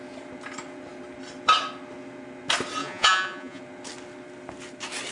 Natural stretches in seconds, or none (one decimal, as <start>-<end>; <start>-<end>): 0.0-2.8; 3.6-5.1

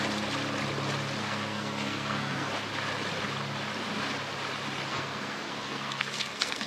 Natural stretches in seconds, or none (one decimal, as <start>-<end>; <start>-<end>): 0.0-1.2; 2.5-4.9

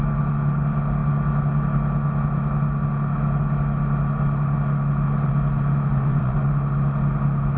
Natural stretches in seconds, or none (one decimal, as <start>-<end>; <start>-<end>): 0.0-5.9; 6.5-7.6

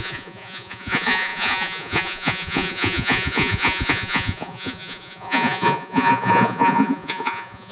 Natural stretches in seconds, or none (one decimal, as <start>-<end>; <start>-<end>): none

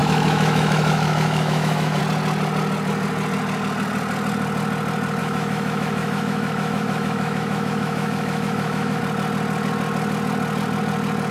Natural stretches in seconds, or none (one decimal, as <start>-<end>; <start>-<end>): 2.0-5.2; 9.0-11.3

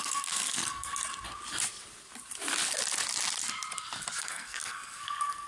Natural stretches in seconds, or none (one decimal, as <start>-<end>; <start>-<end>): 0.9-4.2

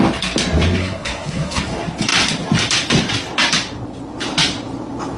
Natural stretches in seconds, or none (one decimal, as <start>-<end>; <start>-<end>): 0.0-0.8; 1.6-5.2